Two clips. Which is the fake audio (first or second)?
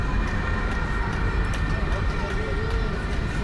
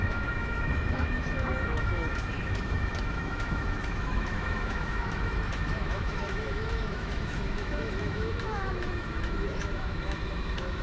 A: second